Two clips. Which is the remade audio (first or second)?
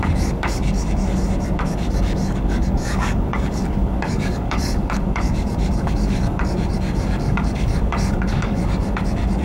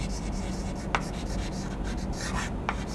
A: first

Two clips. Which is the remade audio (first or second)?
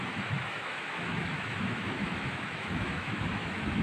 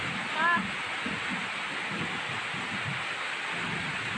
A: first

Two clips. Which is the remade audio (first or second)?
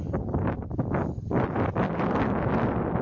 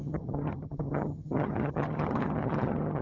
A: second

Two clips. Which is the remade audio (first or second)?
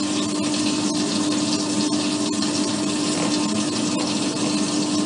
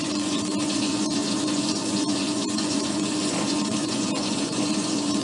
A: second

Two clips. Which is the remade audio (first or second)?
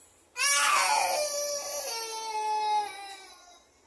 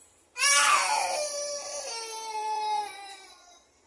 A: second